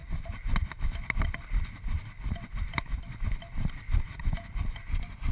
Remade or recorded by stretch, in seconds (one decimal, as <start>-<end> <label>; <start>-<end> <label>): 0.0-3.2 remade; 3.2-5.3 recorded